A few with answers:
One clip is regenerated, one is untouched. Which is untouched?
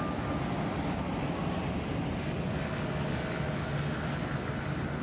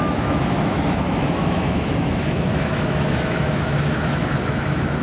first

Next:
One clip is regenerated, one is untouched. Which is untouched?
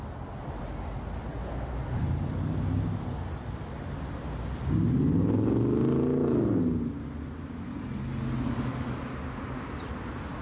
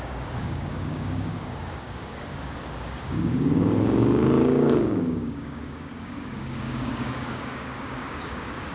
first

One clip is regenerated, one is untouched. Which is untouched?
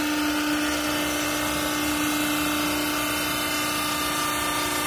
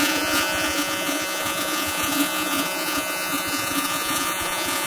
first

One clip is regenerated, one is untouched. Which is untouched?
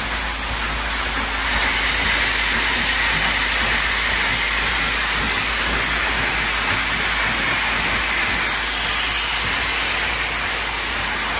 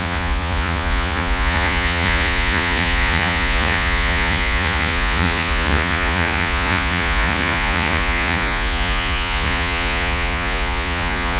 first